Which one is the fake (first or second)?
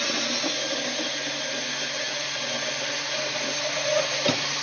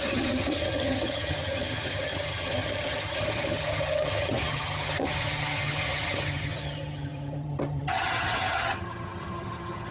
second